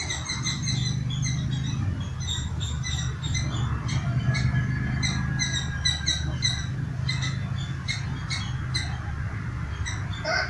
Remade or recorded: recorded